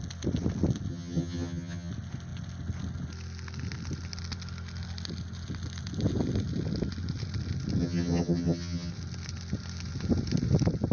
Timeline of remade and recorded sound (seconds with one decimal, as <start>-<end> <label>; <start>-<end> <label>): 0.0-0.9 recorded; 0.9-1.9 remade; 1.9-7.8 recorded; 7.8-8.9 remade; 8.9-10.9 recorded